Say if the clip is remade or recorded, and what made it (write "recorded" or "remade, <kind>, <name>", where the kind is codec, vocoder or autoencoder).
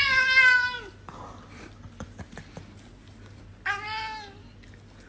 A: recorded